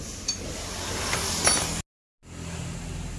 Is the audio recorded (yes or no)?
yes